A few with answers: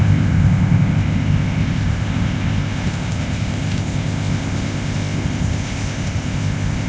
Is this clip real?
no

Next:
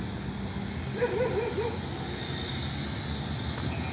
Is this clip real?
yes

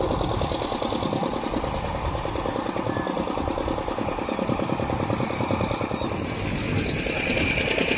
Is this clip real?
yes